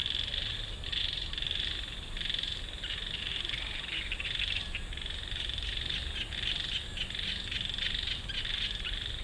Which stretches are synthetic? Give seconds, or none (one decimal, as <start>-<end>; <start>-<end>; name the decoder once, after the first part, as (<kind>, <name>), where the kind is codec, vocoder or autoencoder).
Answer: none